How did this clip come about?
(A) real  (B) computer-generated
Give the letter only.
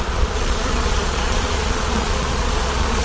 B